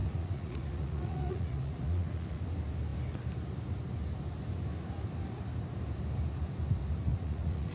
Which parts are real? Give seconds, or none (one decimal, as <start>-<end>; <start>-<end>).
2.4-7.1